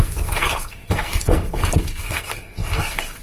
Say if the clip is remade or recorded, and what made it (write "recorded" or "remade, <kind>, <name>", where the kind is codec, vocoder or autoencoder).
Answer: remade, codec, SNAC